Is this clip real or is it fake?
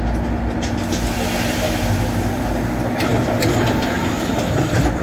real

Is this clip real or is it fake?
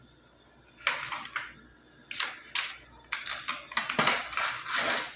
real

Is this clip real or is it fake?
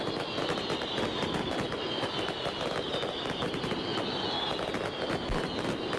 real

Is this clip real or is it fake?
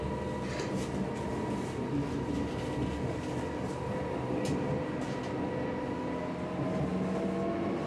real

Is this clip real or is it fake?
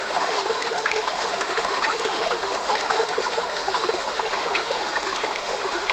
fake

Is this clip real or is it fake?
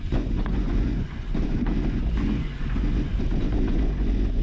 fake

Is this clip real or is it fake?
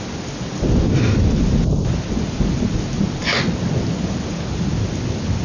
real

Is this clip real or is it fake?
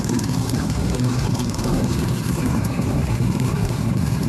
fake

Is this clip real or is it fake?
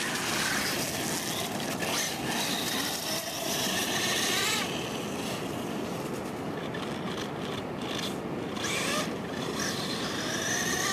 real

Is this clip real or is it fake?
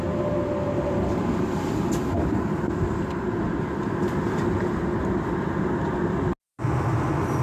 real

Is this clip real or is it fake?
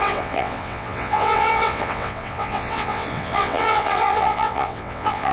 fake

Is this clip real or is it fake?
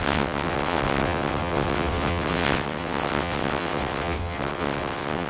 fake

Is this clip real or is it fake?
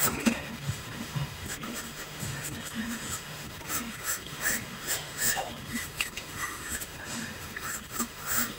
fake